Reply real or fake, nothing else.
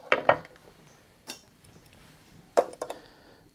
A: fake